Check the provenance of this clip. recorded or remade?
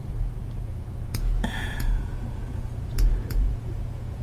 remade